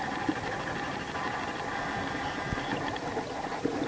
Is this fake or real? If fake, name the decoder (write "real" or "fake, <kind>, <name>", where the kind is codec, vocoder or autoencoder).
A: real